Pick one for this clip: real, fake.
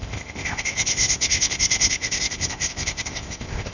fake